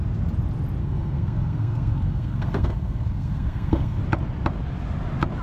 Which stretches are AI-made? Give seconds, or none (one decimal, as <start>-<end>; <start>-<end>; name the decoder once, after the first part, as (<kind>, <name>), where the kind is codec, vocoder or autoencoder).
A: 0.8-4.0 (codec, SNAC)